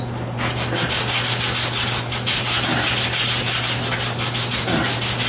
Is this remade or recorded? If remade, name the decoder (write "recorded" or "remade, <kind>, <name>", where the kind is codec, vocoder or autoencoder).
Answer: recorded